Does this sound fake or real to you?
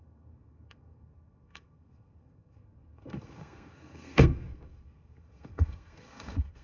fake